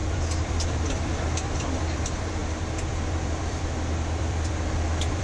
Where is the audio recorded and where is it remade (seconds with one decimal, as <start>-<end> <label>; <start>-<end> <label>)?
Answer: 0.0-2.4 remade; 2.4-2.9 recorded; 2.9-5.2 remade